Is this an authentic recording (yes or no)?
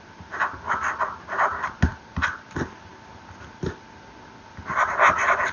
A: yes